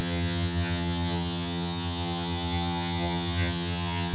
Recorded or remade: remade